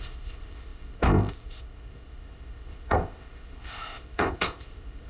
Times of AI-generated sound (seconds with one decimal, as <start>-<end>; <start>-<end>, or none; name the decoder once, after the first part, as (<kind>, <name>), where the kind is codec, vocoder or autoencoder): 0.0-5.1 (codec, ZipCodec)